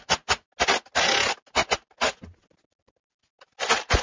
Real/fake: real